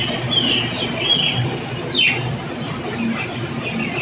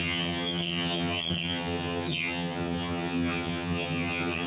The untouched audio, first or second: first